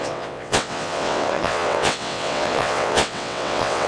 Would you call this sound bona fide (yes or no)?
no